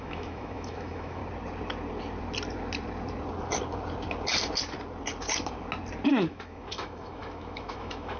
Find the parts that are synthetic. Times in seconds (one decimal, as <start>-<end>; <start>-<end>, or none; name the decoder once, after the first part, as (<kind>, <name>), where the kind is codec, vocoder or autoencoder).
0.0-1.2 (autoencoder, DAC-VAE); 6.1-8.2